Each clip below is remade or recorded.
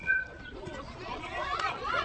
remade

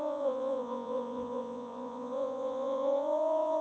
remade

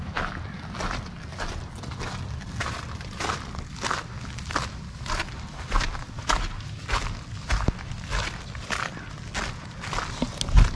recorded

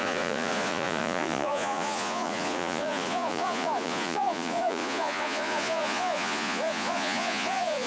remade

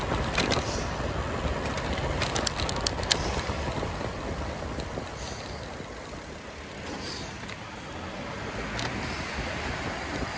recorded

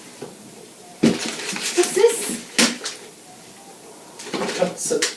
recorded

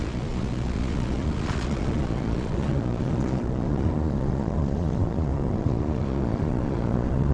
remade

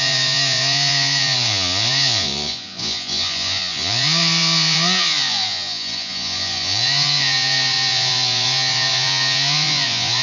remade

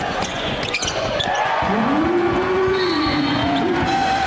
remade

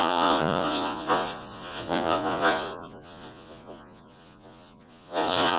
remade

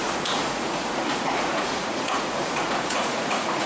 remade